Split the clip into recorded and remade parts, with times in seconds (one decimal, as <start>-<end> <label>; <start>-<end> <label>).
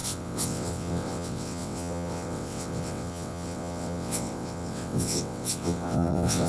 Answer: 0.0-6.5 remade